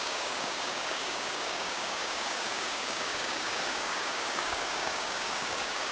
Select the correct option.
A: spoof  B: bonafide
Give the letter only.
A